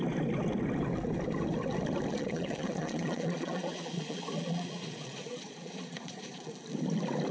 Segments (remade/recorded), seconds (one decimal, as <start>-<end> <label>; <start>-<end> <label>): 0.0-2.1 recorded; 2.1-6.5 remade; 6.5-7.3 recorded